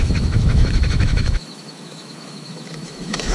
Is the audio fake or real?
fake